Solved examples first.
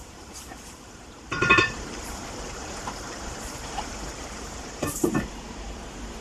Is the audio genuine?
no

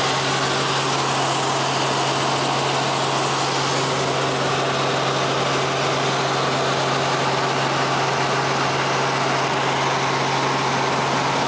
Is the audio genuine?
yes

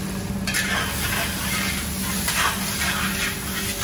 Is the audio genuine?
yes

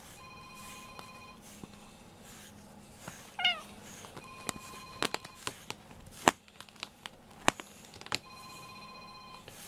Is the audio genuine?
yes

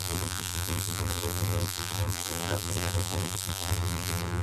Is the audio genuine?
no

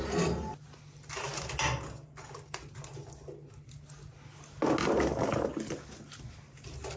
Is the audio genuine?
yes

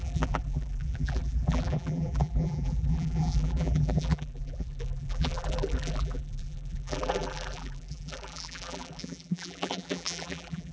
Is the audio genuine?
no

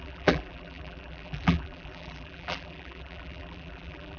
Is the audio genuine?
no